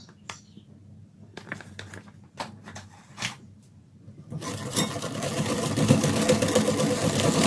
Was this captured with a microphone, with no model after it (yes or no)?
yes